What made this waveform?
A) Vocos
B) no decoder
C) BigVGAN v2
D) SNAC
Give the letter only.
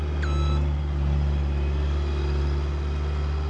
B